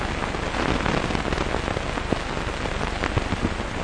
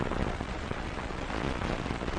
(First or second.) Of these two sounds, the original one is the first